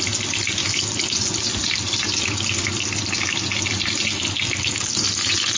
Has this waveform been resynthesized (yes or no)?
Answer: no